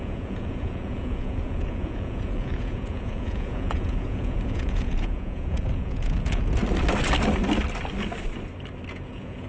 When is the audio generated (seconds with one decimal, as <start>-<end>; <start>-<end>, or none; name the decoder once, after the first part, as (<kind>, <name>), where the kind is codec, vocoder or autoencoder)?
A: 0.0-6.6 (vocoder, Vocos); 8.9-9.5